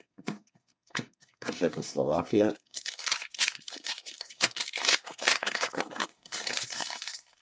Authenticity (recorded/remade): remade